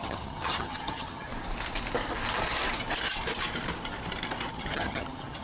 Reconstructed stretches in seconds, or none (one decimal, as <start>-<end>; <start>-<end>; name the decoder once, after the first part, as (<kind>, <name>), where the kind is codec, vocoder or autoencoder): 0.0-1.3 (vocoder, HiFi-GAN); 4.5-5.4